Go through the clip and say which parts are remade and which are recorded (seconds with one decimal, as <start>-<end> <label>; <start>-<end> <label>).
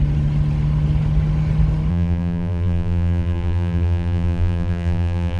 0.0-1.9 recorded; 1.9-5.4 remade